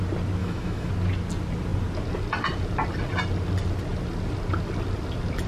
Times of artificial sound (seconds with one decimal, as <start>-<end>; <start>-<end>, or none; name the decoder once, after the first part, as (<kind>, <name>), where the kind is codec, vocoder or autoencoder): 0.4-0.9 (autoencoder, DAC-VAE)